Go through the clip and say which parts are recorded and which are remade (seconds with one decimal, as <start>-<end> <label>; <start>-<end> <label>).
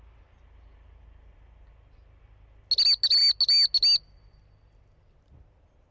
0.0-5.9 recorded